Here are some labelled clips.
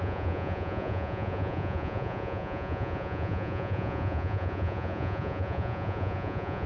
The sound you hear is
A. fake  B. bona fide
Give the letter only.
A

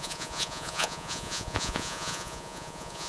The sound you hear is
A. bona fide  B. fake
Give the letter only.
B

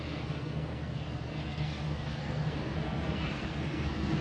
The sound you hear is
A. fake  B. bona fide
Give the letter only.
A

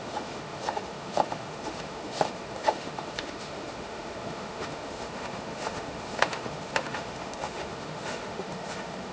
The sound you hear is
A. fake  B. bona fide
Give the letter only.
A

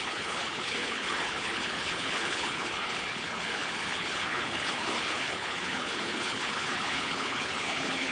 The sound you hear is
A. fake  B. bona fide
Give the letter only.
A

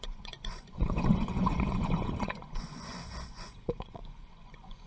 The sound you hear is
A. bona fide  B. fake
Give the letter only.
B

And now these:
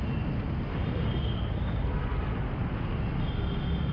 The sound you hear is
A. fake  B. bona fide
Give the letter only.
B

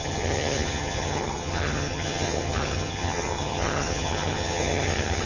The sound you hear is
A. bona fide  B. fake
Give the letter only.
B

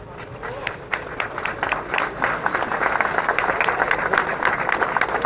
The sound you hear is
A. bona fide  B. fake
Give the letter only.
B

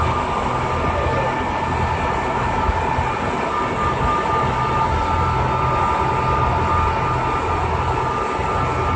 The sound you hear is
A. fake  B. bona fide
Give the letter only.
B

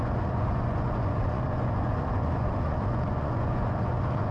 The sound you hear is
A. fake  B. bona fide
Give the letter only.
A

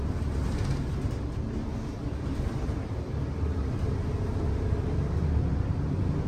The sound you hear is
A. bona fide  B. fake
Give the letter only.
A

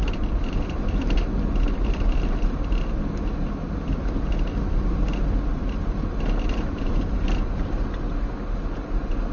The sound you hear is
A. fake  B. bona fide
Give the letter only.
B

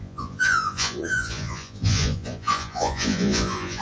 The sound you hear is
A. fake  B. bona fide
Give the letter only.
A